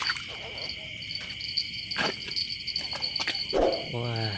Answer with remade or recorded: remade